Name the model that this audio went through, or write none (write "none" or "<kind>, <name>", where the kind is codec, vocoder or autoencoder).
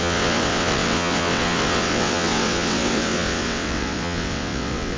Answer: vocoder, WaveNeXt